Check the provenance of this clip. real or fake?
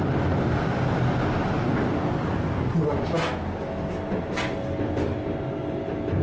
real